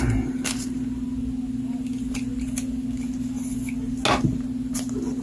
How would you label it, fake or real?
real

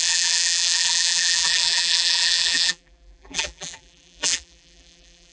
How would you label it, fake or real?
fake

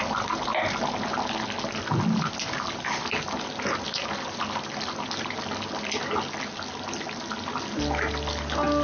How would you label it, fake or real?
real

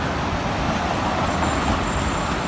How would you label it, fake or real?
real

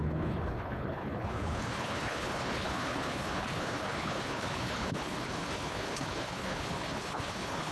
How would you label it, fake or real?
fake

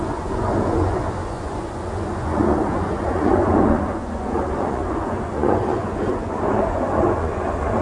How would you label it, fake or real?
fake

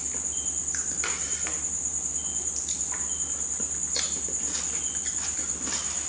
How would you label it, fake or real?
real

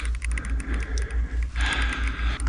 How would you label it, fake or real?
real